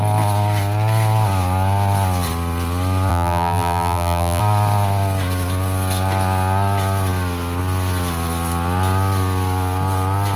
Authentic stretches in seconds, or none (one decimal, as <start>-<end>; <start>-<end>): 0.0-3.1; 4.4-10.4